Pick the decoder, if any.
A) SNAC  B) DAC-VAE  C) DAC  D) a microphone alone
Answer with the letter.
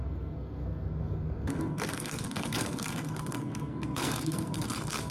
A